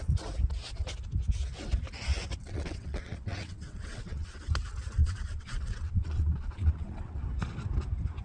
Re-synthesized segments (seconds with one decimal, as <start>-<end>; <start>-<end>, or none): 2.4-4.4; 5.0-7.2